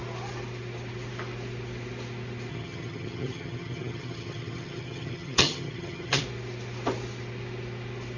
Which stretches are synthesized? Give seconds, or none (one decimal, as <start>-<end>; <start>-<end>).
2.5-6.2